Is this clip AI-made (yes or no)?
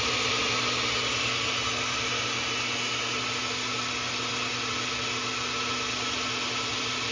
no